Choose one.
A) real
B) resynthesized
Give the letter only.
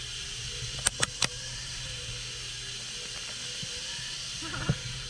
A